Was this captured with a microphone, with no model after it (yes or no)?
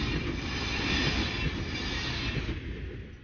yes